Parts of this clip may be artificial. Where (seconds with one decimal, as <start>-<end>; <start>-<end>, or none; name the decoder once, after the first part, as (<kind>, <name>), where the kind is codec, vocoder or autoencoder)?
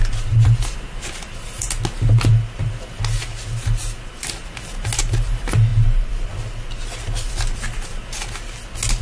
none